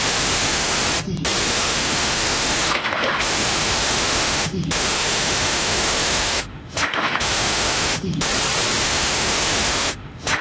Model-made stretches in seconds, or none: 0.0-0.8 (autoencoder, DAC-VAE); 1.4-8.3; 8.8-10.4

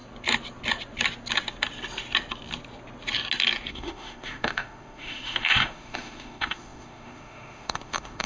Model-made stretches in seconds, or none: 3.7-8.3 (autoencoder, DAC-VAE)

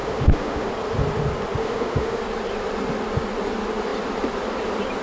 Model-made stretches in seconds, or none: 0.0-0.7 (autoencoder, DAC-VAE); 1.6-2.2